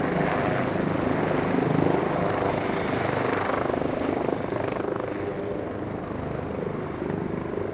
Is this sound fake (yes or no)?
no